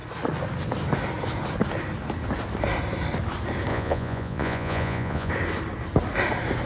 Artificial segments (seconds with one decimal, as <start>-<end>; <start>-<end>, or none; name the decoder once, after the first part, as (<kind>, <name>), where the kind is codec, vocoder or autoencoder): 3.7-5.3 (vocoder, Vocos)